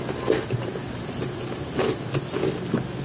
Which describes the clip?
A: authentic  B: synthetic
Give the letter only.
A